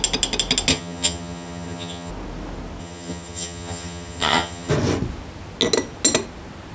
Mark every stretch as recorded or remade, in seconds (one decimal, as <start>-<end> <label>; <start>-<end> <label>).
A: 0.0-0.7 recorded; 0.7-2.1 remade; 2.1-2.8 recorded; 2.8-4.7 remade; 4.7-6.7 recorded